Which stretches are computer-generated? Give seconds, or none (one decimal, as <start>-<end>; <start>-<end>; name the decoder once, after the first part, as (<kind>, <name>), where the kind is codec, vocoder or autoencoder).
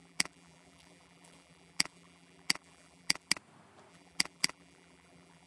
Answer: 0.0-3.3 (vocoder, BigVGAN v2); 3.9-5.5